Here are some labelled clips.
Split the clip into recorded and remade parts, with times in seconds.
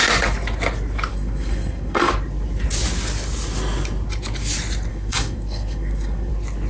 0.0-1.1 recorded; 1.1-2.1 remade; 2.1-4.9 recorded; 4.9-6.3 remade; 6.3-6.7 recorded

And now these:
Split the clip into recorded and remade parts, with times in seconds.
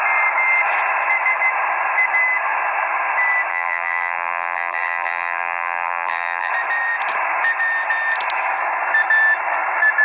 0.0-3.5 recorded; 3.5-6.5 remade; 6.5-10.0 recorded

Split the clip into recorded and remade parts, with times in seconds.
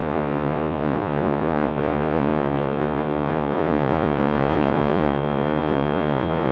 0.0-6.5 remade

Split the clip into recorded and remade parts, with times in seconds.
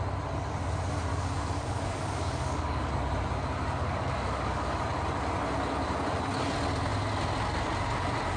0.0-1.1 recorded; 1.1-2.9 remade; 2.9-3.8 recorded; 3.8-4.8 remade; 4.8-8.4 recorded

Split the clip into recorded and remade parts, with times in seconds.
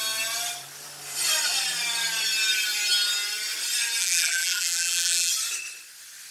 0.0-4.0 recorded; 4.0-5.3 remade; 5.3-6.3 recorded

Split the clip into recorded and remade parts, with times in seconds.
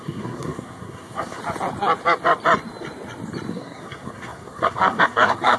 0.0-1.4 remade; 1.4-3.5 recorded; 3.5-5.6 remade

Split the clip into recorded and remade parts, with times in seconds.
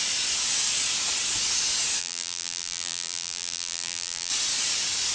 0.0-2.0 recorded; 2.0-4.3 remade; 4.3-5.1 recorded